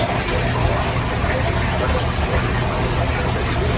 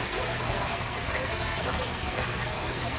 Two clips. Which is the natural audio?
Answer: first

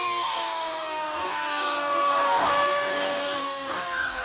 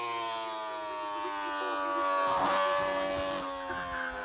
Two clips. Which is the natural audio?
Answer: second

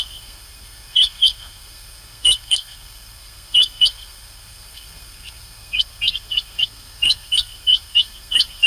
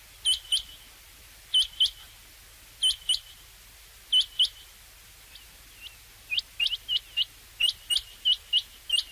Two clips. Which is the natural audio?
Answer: second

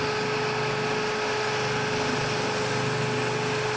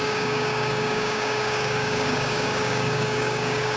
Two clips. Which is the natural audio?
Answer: first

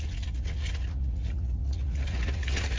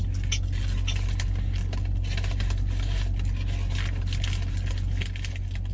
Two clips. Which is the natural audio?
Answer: second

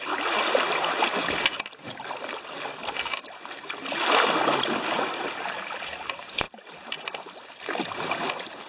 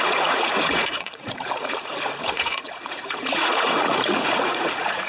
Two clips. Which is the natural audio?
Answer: first